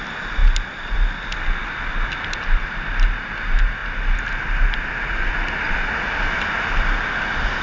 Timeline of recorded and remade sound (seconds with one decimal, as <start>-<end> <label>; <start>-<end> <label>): 0.0-7.6 recorded

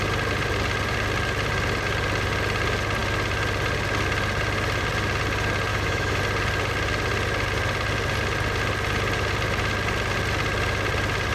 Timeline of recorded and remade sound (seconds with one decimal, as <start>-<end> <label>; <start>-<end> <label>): 0.0-5.7 recorded; 5.7-6.2 remade; 6.2-11.3 recorded